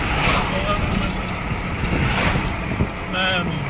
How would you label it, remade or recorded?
recorded